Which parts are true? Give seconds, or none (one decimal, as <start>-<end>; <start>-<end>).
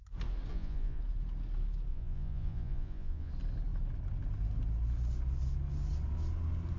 0.0-0.5; 1.0-1.9; 3.3-6.8